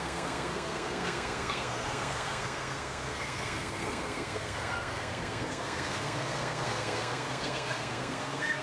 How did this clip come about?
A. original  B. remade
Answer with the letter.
B